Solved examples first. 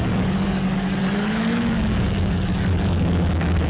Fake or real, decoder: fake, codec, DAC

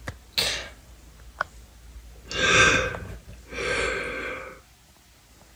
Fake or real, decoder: real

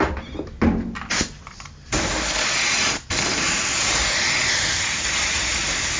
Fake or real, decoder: real